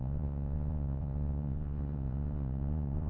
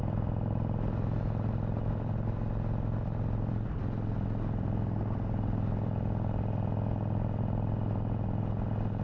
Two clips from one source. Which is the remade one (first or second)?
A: first